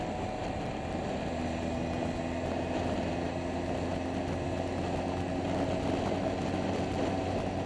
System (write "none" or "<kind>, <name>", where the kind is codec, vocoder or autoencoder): none